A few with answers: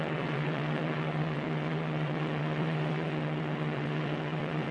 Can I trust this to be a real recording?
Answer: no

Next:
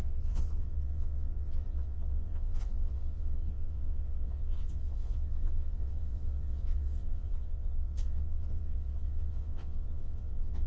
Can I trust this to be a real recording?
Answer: no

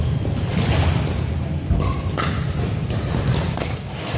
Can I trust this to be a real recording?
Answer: yes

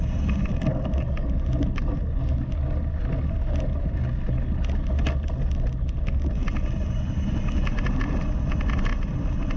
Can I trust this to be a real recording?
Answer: yes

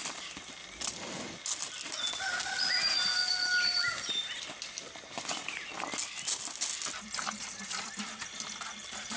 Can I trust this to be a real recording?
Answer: yes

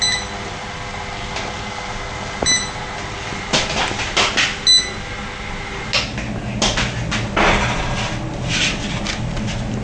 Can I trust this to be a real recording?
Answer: yes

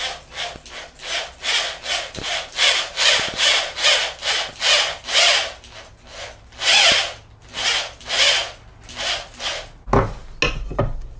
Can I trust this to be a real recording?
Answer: yes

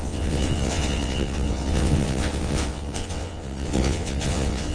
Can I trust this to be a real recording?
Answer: no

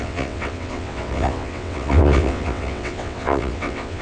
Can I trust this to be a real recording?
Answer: no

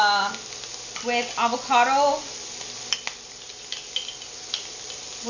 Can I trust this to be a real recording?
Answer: yes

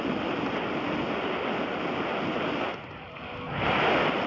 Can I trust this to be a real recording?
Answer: yes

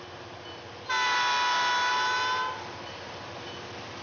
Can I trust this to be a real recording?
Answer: yes